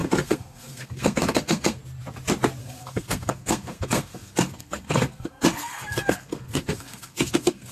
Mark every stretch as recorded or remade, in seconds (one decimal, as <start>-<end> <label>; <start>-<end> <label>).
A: 0.0-1.8 remade; 1.8-2.6 recorded; 2.6-7.7 remade